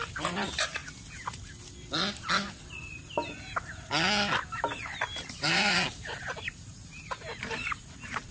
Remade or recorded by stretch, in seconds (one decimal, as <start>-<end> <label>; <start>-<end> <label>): 0.0-0.8 remade; 0.8-5.3 recorded; 5.3-8.3 remade

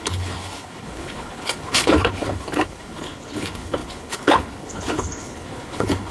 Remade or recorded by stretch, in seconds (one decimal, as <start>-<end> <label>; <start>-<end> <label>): 0.0-6.1 remade

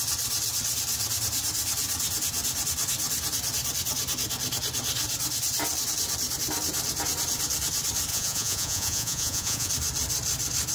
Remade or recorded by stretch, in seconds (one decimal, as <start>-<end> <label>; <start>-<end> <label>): 0.0-8.1 recorded; 8.1-9.7 remade; 9.7-10.7 recorded